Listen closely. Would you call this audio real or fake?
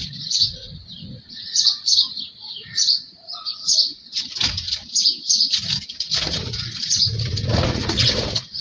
fake